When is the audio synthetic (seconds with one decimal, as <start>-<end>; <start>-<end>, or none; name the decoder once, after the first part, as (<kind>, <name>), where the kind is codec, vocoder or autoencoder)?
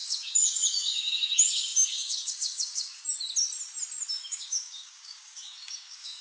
0.0-3.0 (codec, DAC); 4.3-6.2